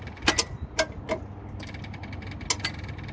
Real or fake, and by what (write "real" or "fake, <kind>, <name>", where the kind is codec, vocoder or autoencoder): real